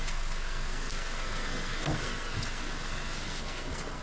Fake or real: fake